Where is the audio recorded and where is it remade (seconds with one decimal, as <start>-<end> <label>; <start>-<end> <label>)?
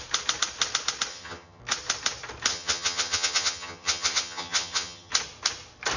0.0-1.1 recorded; 1.1-1.6 remade; 1.6-2.5 recorded; 2.5-5.1 remade; 5.1-6.0 recorded